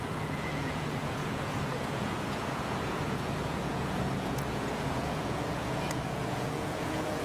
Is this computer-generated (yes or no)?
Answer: yes